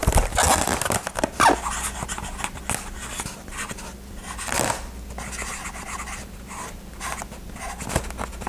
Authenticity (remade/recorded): recorded